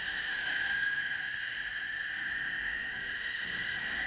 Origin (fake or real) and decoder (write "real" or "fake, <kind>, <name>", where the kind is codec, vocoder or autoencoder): fake, autoencoder, DAC-VAE